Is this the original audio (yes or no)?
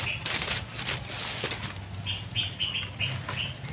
yes